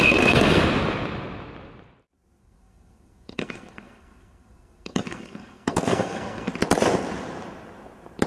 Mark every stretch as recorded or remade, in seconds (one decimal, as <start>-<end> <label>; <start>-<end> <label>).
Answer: 0.0-0.6 remade; 0.6-2.4 recorded; 2.4-6.5 remade; 6.5-8.3 recorded